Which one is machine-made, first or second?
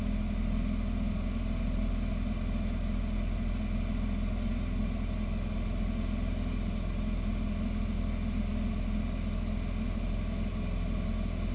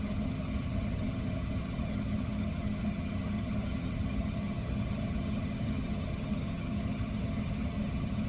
second